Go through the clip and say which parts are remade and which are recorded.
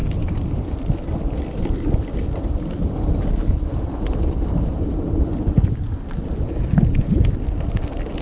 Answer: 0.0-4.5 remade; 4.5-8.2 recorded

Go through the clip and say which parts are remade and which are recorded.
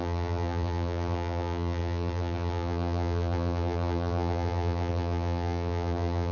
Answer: 0.0-6.3 remade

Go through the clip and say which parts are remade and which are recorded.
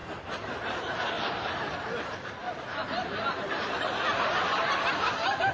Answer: 0.0-5.5 recorded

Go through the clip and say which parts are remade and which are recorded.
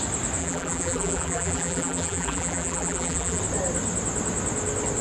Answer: 0.0-0.4 recorded; 0.4-3.4 remade; 3.4-5.0 recorded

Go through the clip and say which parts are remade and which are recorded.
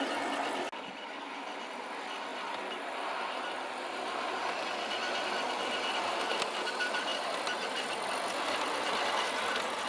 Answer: 0.0-9.9 recorded